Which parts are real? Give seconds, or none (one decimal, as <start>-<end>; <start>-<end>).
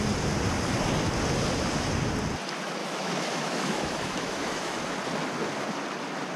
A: 0.0-2.8; 4.8-6.4